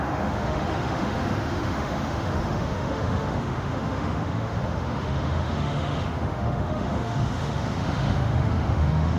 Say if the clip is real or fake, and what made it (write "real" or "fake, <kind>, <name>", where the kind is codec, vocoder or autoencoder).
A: fake, autoencoder, DAC-VAE